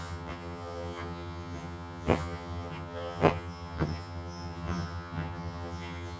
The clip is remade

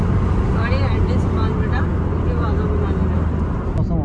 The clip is recorded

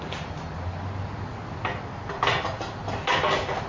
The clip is recorded